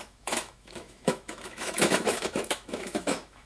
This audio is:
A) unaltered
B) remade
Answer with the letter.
B